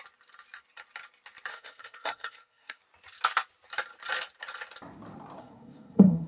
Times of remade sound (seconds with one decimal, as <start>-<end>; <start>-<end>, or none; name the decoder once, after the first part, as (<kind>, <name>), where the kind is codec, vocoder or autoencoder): 1.5-2.8 (codec, SNAC); 5.4-6.3